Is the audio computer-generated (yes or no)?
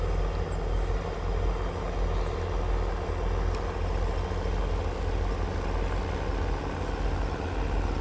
no